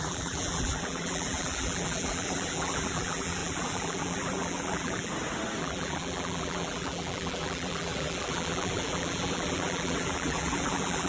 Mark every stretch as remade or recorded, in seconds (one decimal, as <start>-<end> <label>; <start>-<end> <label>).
0.0-5.1 remade; 5.1-5.6 recorded; 5.6-11.1 remade